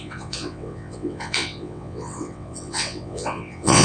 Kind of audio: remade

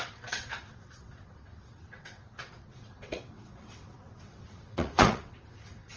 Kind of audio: remade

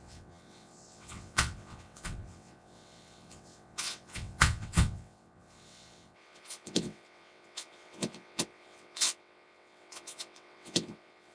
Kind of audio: remade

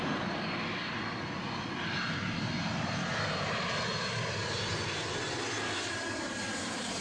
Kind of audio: recorded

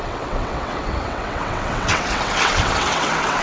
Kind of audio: remade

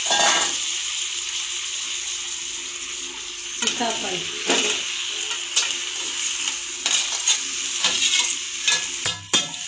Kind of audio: recorded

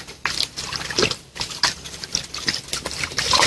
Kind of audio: recorded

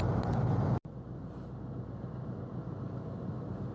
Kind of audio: recorded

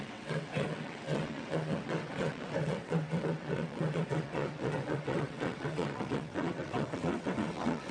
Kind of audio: remade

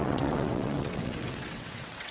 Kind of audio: remade